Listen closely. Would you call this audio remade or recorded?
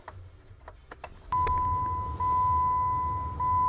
recorded